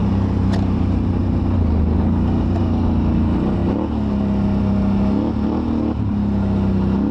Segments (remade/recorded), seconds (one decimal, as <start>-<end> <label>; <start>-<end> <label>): 0.0-1.4 remade; 1.4-7.1 recorded